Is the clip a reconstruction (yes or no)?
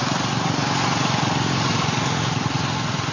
no